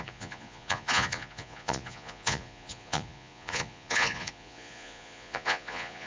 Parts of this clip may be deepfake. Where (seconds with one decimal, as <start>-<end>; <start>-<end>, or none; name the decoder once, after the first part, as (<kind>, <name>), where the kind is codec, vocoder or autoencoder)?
0.0-6.1 (vocoder, Vocos)